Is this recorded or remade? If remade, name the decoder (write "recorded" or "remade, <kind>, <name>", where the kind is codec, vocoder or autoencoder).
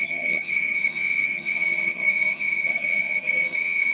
remade, vocoder, HiFi-GAN